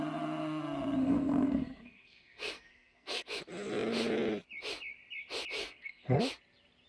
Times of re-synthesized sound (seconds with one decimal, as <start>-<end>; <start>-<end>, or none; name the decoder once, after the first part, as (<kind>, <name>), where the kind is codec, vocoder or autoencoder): 1.0-3.4 (codec, SNAC); 5.6-6.2